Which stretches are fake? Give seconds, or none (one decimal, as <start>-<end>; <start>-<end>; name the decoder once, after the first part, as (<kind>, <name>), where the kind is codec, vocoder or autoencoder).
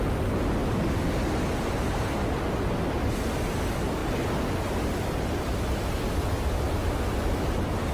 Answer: none